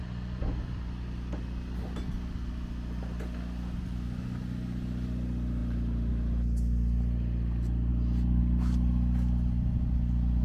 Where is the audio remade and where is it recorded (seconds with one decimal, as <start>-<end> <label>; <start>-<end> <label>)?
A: 0.0-10.4 recorded